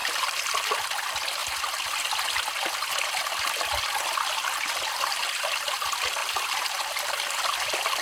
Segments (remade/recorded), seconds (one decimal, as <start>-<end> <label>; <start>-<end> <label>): 0.0-0.5 remade; 0.5-6.2 recorded; 6.2-7.0 remade; 7.0-8.0 recorded

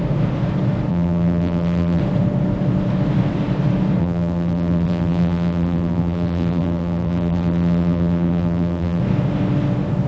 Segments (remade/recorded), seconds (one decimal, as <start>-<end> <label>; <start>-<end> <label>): 0.0-0.9 recorded; 0.9-2.0 remade; 2.0-4.0 recorded; 4.0-9.0 remade; 9.0-10.1 recorded

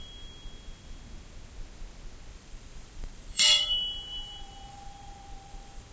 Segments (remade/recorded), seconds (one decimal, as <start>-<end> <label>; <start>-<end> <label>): 0.0-2.3 recorded; 2.3-5.9 remade

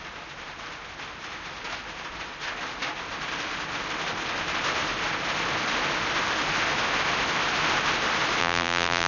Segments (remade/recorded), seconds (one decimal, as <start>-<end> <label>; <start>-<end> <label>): 0.0-8.4 recorded; 8.4-9.1 remade

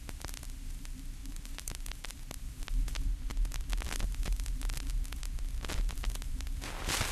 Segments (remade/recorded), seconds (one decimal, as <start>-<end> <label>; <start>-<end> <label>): 0.0-1.2 recorded; 1.2-1.7 remade; 1.7-7.1 recorded

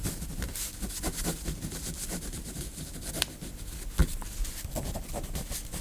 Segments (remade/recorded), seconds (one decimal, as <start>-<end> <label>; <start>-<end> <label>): 0.0-4.0 recorded; 4.0-4.7 remade; 4.7-5.8 recorded